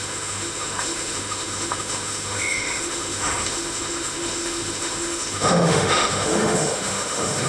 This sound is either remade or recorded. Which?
remade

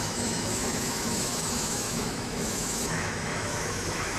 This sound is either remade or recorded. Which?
remade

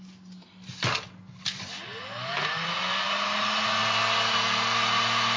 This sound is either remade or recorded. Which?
recorded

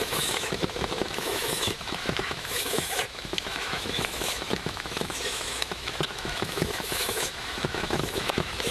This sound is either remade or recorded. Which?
remade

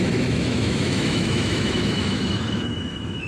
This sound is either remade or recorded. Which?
remade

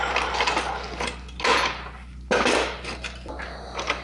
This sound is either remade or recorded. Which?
recorded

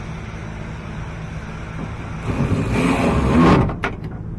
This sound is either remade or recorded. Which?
recorded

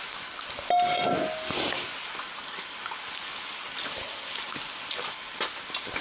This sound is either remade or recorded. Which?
recorded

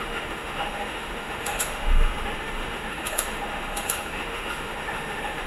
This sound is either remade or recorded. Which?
remade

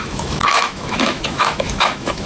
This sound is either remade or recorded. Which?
remade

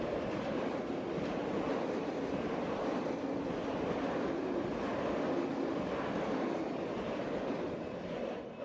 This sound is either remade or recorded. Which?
recorded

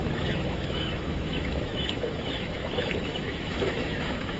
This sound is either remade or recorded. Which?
remade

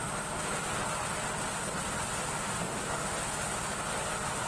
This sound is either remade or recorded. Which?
recorded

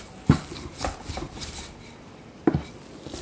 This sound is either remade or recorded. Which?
recorded